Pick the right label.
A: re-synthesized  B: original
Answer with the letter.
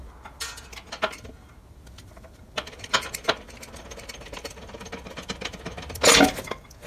B